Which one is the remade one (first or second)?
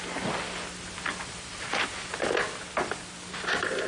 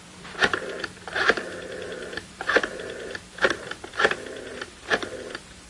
second